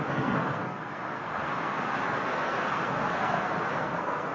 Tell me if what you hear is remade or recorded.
remade